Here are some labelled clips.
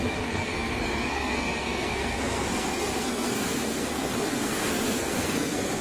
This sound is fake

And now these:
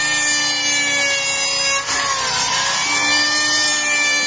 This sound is real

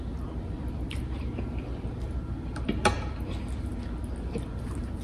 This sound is real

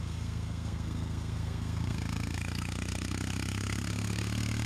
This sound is fake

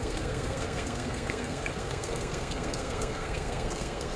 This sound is fake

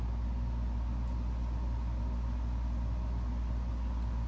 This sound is real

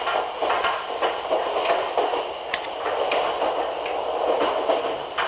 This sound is real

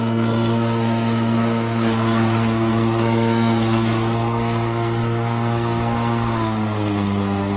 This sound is fake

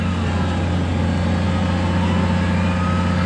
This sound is real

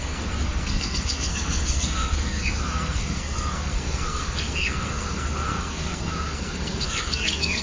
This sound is fake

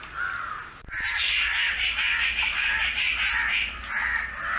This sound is real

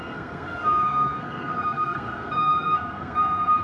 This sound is fake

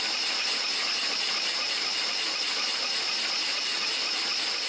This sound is real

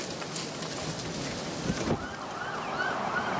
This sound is real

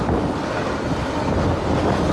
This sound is real